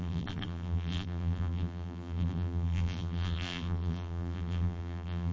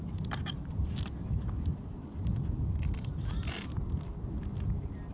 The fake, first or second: first